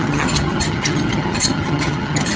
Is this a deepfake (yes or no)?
yes